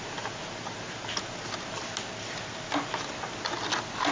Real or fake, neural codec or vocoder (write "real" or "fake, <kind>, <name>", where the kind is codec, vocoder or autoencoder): real